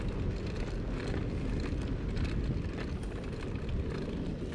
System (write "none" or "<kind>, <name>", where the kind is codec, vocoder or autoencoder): none